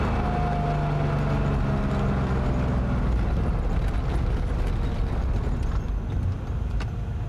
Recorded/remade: recorded